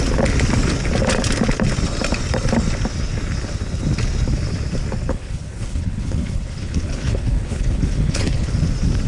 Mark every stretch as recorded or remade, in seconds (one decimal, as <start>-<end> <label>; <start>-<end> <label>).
0.0-5.1 recorded; 5.1-8.5 remade; 8.5-9.1 recorded